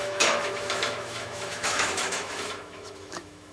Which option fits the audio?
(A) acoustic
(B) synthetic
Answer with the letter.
B